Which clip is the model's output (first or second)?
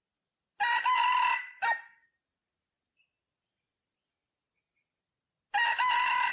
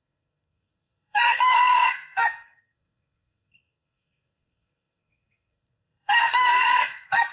second